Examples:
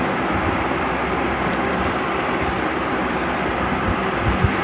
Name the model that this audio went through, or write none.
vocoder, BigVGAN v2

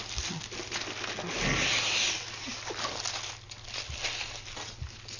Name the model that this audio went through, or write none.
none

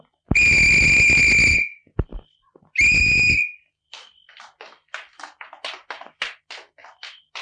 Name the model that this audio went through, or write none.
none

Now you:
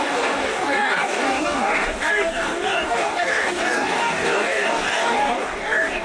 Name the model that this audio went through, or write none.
codec, DAC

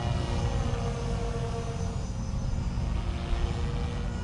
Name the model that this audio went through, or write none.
none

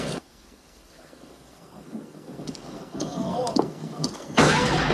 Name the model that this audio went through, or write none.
codec, SNAC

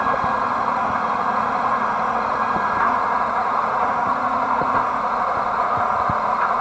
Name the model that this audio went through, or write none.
vocoder, Vocos